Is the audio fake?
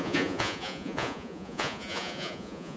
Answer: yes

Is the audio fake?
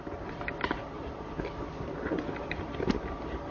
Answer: no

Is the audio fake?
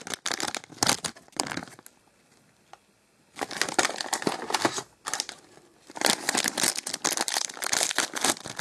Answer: no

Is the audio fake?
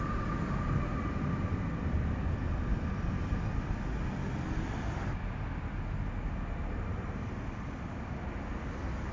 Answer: no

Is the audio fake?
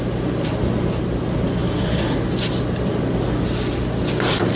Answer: no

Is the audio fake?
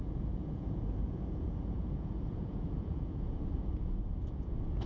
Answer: yes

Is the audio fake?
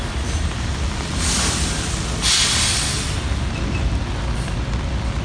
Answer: no